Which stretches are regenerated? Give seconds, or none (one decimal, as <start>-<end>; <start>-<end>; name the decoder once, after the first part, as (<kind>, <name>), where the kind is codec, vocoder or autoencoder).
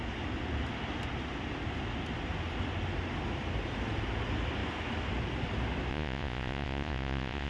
5.9-7.5 (vocoder, Vocos)